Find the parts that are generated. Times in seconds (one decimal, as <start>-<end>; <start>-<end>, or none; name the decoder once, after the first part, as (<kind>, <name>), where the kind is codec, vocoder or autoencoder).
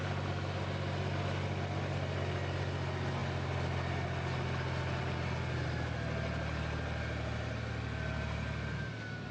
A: none